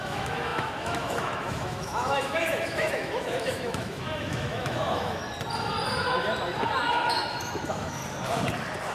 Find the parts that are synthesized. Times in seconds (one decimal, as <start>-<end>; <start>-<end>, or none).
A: 0.0-5.2; 6.9-8.0